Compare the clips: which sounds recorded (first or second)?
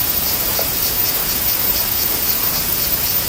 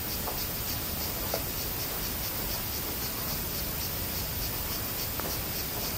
second